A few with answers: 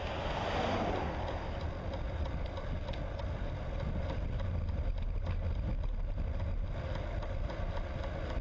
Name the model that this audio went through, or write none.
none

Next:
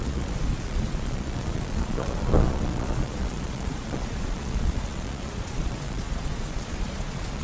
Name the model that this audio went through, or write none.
vocoder, Vocos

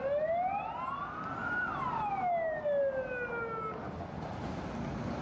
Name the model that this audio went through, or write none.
none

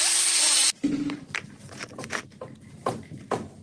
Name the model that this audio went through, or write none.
none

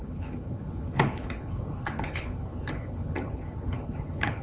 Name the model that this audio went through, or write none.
codec, HILCodec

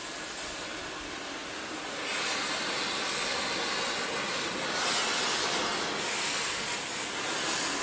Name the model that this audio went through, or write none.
none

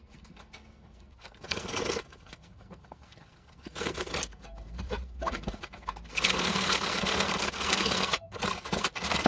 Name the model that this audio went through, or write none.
codec, SNAC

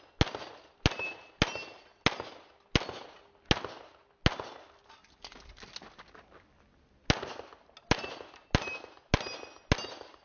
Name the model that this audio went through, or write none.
none